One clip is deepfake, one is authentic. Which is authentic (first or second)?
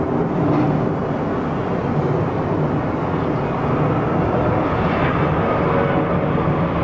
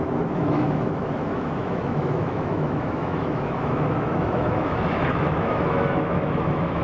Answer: first